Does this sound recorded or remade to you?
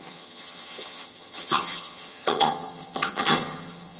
remade